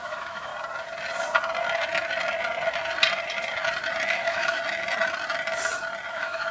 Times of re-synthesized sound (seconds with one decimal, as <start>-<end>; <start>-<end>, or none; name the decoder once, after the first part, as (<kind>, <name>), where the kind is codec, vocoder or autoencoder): 0.0-0.5 (autoencoder, DAC-VAE); 4.1-4.6; 6.1-6.5

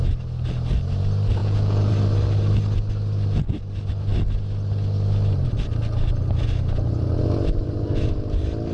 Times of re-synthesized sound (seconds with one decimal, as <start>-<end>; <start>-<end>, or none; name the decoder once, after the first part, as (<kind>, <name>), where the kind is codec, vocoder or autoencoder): 1.4-1.9 (vocoder, Vocos)

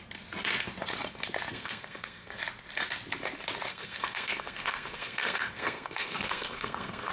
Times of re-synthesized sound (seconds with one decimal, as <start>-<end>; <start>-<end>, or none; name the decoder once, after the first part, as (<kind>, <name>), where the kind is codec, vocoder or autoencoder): 1.5-2.4 (codec, SNAC); 3.7-7.1

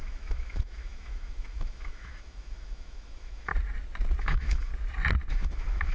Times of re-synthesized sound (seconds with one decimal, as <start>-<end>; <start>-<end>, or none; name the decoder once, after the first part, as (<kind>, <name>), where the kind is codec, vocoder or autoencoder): 0.0-3.5 (autoencoder, DAC-VAE); 4.2-4.7; 5.3-5.9

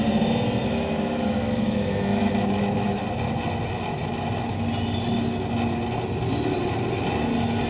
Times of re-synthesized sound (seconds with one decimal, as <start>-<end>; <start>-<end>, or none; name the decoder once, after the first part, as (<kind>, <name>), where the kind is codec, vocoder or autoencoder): 0.6-3.0 (autoencoder, DAC-VAE)

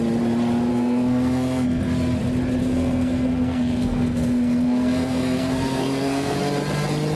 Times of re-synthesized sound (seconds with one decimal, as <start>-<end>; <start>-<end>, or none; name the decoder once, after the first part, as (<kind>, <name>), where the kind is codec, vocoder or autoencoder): 0.7-1.8 (codec, SNAC); 2.6-6.4